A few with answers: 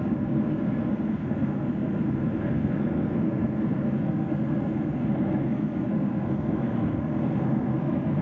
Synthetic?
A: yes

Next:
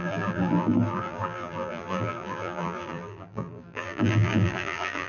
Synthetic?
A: yes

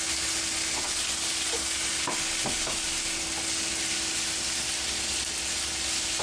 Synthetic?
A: no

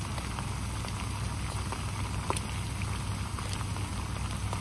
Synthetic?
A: no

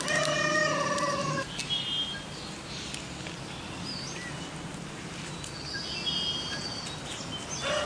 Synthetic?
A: no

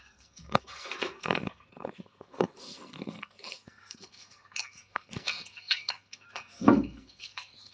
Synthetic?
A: yes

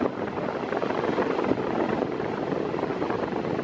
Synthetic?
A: no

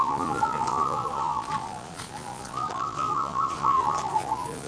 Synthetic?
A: yes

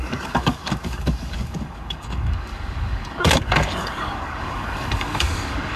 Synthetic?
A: yes